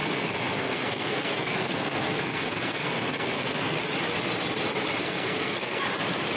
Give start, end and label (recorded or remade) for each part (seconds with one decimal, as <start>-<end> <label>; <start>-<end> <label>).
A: 0.0-3.8 remade; 3.8-5.0 recorded; 5.0-5.8 remade; 5.8-6.4 recorded